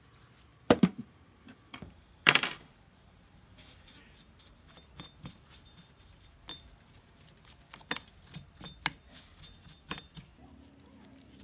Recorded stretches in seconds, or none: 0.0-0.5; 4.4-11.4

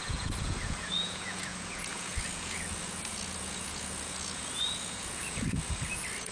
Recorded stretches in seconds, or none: none

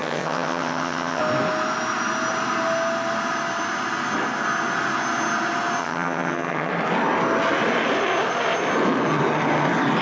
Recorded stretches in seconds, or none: 1.2-5.8; 6.7-10.0

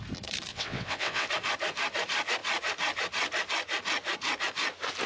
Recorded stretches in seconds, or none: 0.0-0.5; 1.3-5.1